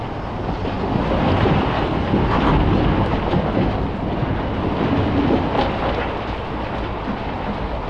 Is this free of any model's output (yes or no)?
yes